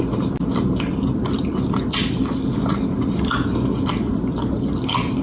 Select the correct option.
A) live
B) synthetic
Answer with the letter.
B